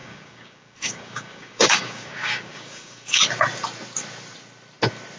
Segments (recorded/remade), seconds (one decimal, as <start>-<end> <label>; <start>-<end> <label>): 0.0-3.2 remade; 3.2-5.2 recorded